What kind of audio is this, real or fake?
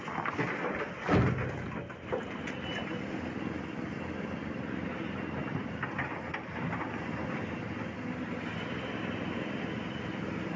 real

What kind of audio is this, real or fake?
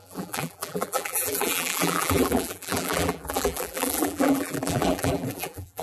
fake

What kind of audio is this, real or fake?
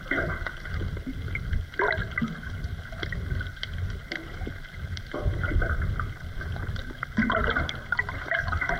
real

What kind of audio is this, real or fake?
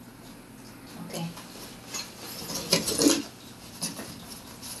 real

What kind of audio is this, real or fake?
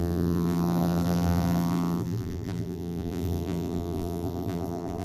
fake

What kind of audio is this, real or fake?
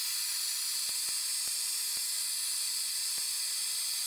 real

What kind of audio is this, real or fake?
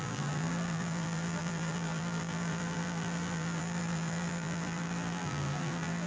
fake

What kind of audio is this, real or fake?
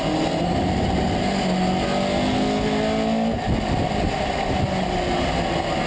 real